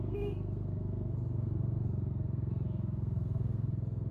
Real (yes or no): no